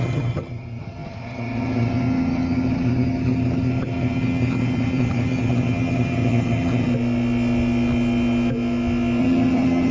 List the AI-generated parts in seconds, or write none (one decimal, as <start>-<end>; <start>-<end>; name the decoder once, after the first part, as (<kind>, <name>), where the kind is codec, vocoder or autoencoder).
0.0-6.9 (vocoder, HiFi-GAN); 9.2-9.9